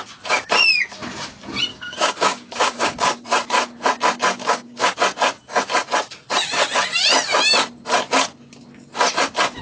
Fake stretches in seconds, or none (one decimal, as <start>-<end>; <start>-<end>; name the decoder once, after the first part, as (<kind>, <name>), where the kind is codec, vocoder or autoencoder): 1.7-3.3 (codec, DAC); 4.4-4.9